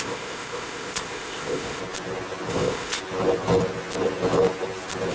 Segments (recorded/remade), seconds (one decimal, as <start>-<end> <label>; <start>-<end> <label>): 0.0-1.8 remade; 1.8-2.5 recorded; 2.5-3.0 remade; 3.0-5.1 recorded